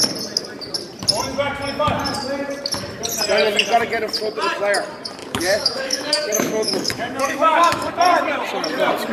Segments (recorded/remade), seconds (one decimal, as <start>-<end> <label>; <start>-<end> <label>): 0.0-5.2 recorded; 5.2-7.9 remade; 7.9-9.1 recorded